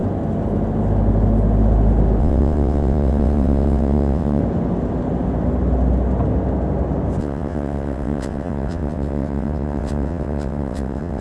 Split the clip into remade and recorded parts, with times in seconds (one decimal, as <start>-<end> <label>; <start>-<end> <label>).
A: 0.0-2.2 recorded; 2.2-4.4 remade; 4.4-7.2 recorded; 7.2-11.2 remade